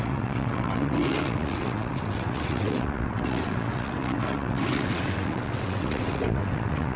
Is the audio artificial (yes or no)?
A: yes